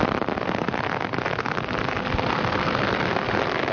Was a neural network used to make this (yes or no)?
no